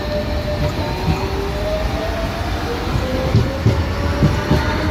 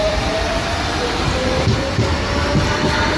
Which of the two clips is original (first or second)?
first